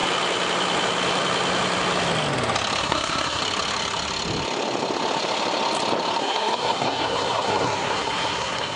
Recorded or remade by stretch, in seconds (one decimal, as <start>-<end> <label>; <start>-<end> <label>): 0.0-2.8 recorded; 2.8-3.4 remade; 3.4-6.2 recorded; 6.2-8.8 remade